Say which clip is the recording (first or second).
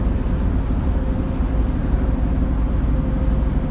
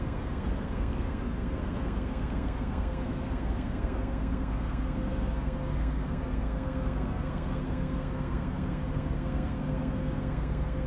first